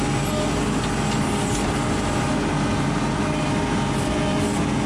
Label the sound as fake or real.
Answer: real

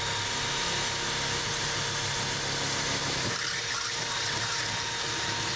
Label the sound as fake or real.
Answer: real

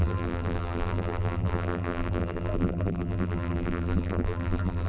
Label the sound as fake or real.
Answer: fake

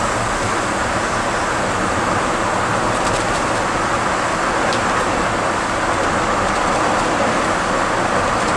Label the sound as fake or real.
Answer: real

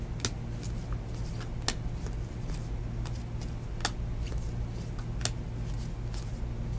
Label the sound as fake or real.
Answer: real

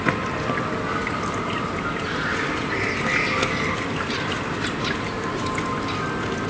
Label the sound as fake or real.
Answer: real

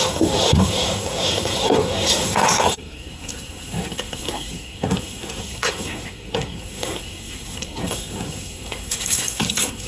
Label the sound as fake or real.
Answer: fake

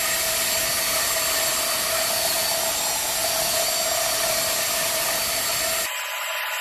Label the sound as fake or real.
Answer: real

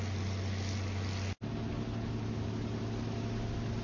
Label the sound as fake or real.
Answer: real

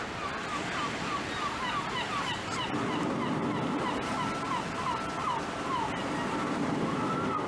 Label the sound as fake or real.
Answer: real